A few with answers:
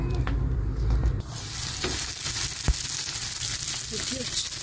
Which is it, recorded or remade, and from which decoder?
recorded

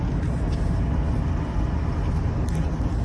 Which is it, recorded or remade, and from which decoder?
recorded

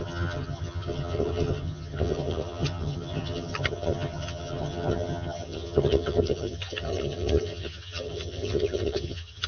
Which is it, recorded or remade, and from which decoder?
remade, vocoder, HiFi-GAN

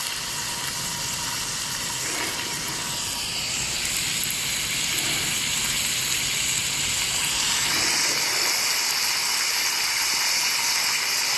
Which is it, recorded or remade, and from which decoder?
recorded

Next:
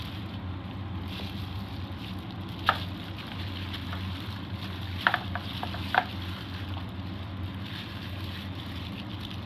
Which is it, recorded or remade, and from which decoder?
recorded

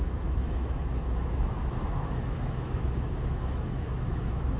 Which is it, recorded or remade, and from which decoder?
remade, autoencoder, DAC-VAE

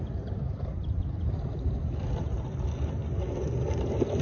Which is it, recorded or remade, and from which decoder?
recorded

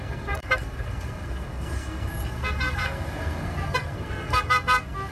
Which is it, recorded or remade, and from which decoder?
remade, codec, SNAC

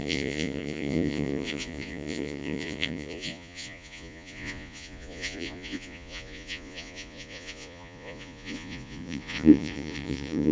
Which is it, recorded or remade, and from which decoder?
remade, vocoder, Vocos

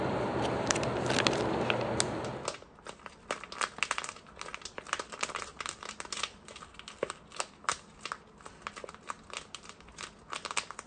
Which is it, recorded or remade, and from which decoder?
recorded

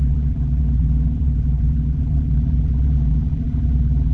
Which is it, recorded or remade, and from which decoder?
remade, vocoder, BigVGAN v2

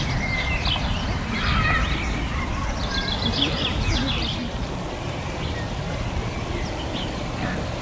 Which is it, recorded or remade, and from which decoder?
recorded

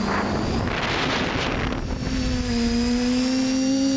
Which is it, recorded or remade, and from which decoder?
recorded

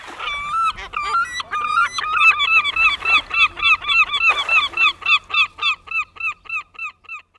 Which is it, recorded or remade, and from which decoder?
recorded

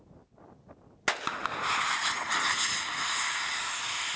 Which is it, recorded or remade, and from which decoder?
recorded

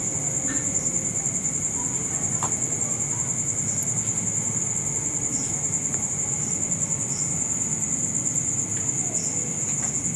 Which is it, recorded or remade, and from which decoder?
recorded